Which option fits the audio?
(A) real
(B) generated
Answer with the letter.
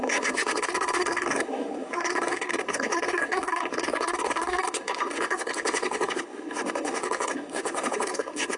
B